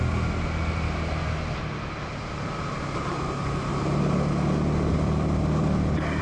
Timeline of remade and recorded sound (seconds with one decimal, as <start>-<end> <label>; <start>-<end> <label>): 0.0-6.2 recorded